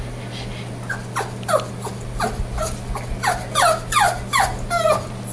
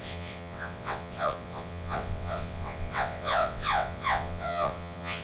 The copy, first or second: second